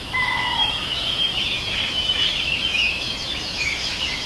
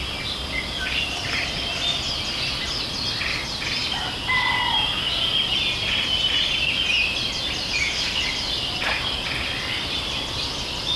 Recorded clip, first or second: second